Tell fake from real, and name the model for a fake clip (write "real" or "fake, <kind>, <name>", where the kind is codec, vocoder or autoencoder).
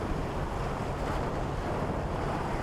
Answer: real